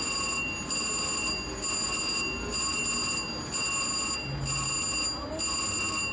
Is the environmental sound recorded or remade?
recorded